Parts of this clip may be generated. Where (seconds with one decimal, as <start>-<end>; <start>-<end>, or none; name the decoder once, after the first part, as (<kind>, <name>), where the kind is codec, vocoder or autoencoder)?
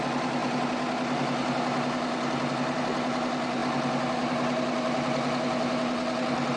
none